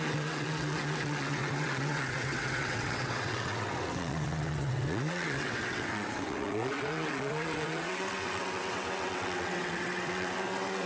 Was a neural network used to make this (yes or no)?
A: yes